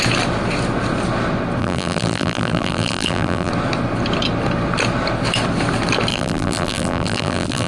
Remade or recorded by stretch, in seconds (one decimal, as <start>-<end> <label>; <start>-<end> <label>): 0.0-1.6 recorded; 1.6-3.5 remade; 3.5-6.1 recorded; 6.1-7.7 remade